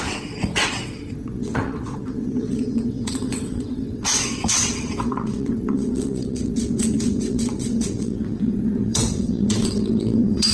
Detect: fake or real fake